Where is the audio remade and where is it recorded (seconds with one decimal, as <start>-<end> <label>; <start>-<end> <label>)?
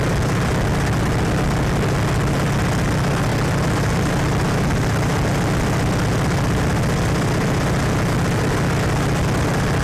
0.0-9.8 recorded